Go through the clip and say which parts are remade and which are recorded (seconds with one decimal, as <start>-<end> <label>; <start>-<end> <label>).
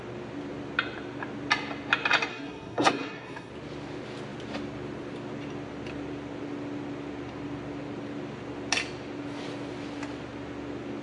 0.0-2.3 recorded; 2.3-3.5 remade; 3.5-11.0 recorded